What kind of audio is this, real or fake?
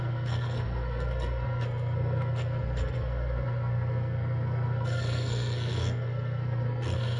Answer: fake